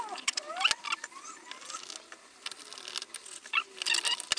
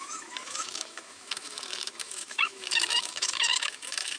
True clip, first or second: first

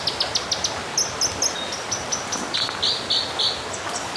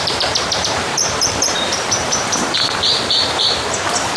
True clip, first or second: first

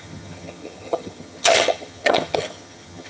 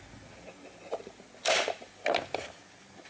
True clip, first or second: second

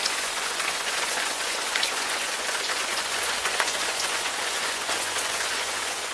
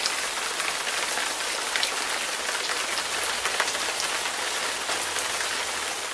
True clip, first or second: second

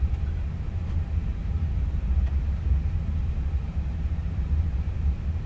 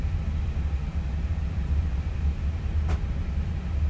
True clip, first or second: second